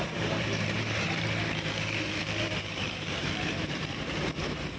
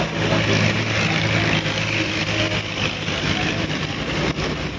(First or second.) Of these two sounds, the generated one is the first